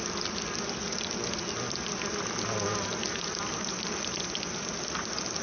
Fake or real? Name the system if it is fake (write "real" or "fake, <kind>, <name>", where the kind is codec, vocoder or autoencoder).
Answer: real